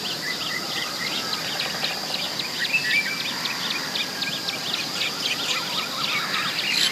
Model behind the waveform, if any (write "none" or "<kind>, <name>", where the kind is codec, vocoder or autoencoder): none